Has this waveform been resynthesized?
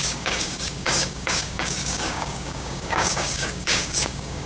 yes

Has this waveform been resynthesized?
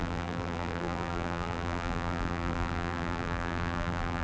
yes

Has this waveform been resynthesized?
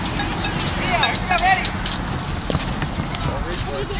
no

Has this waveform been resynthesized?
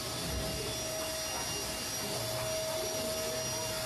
no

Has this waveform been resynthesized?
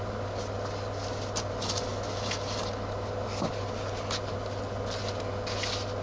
no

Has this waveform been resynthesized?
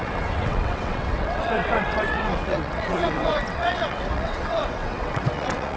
yes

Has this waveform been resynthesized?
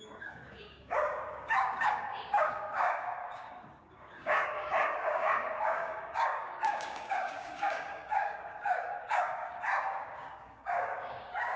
yes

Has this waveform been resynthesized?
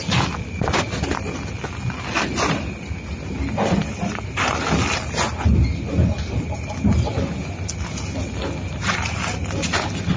no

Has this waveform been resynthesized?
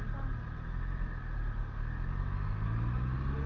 no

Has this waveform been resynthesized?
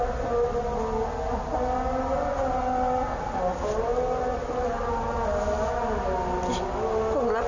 no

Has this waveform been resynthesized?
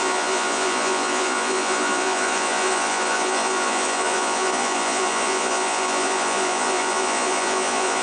yes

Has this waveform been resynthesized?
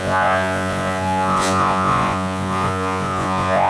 yes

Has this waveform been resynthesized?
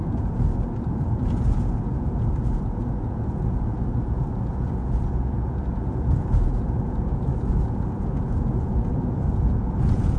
yes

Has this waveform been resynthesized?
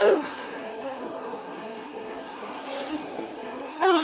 yes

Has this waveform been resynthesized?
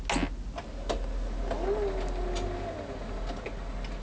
no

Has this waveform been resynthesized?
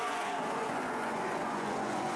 yes